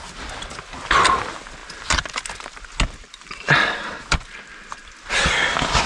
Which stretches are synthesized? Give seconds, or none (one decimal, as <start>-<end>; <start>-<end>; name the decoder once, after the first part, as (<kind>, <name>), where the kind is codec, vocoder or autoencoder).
none